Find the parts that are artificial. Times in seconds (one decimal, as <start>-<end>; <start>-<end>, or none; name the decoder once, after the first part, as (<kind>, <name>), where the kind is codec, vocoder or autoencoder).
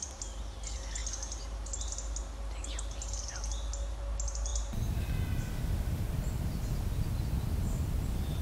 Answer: none